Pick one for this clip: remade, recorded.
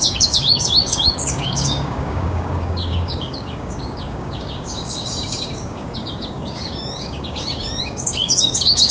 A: remade